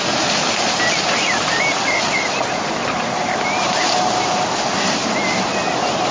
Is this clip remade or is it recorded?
recorded